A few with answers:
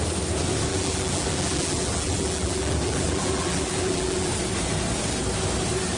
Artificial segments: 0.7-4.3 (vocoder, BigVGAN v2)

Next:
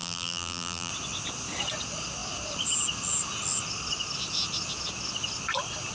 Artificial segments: 0.0-0.9 (vocoder, BigVGAN v2)

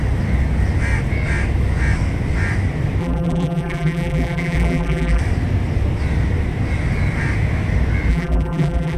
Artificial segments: 3.0-5.2 (vocoder, BigVGAN v2); 8.1-9.0

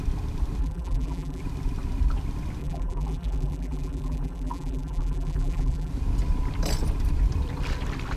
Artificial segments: 0.6-1.4 (vocoder, BigVGAN v2); 2.6-5.9

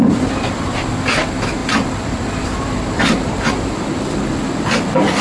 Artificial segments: 1.6-3.6 (vocoder, BigVGAN v2)

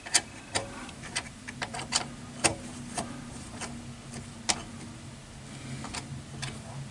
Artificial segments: 0.6-2.1 (vocoder, BigVGAN v2); 2.5-3.6